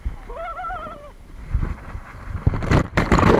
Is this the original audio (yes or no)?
no